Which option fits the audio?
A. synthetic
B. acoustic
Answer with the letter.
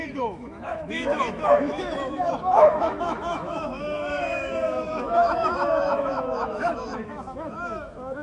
A